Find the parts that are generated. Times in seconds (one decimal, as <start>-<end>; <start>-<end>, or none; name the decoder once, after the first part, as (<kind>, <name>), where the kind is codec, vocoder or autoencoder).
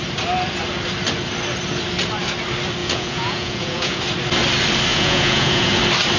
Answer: 2.8-4.0 (vocoder, Vocos); 4.9-5.8